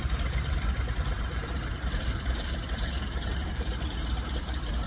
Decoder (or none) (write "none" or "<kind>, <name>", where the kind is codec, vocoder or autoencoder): vocoder, BigVGAN v2